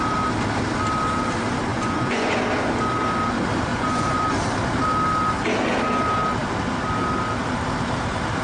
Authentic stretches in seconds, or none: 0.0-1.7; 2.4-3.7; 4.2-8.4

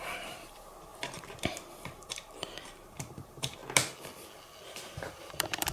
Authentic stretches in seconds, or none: 3.6-4.8

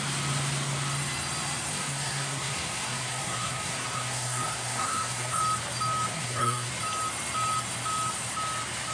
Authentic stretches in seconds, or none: 0.0-1.7; 5.4-6.1; 6.7-8.9

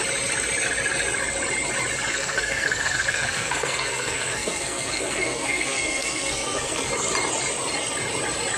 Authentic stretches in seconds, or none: 0.0-2.1; 6.9-8.6

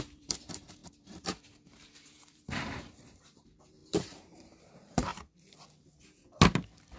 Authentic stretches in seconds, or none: 5.1-7.0

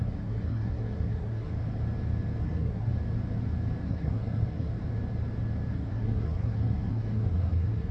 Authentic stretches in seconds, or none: 1.5-2.4; 2.9-3.8; 4.7-5.7